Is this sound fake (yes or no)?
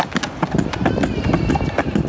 no